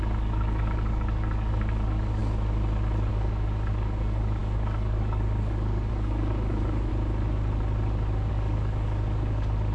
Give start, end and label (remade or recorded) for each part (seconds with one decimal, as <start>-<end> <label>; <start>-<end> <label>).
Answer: 0.0-2.2 remade; 2.2-3.1 recorded; 3.1-6.9 remade; 6.9-8.3 recorded; 8.3-9.7 remade